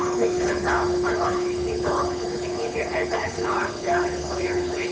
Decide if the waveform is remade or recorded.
remade